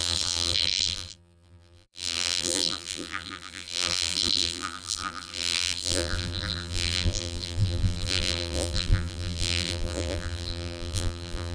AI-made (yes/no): yes